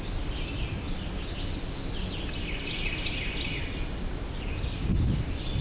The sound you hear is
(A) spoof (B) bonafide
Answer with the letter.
B